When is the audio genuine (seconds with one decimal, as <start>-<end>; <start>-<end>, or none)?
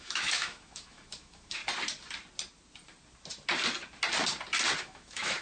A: 1.6-4.8